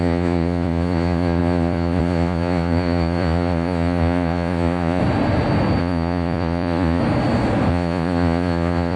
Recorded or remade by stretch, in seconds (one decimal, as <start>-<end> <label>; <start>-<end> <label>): 0.0-5.0 remade; 5.0-5.8 recorded; 5.8-7.0 remade; 7.0-7.7 recorded; 7.7-9.0 remade